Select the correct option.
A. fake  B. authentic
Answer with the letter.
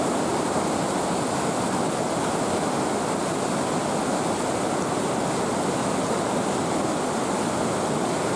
B